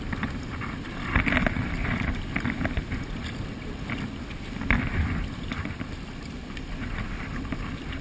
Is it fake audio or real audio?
real